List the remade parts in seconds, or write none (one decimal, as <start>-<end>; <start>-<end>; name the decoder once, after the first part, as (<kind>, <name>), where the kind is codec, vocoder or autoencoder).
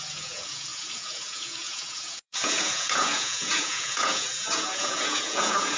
0.0-5.8 (vocoder, Vocos)